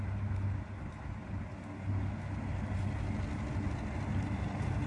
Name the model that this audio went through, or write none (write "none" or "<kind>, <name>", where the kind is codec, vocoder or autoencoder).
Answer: none